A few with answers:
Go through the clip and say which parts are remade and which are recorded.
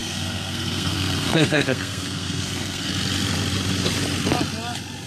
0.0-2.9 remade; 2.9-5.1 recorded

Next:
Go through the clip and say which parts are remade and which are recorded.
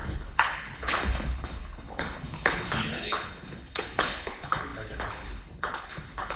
0.0-6.4 remade